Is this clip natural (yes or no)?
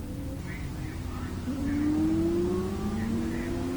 yes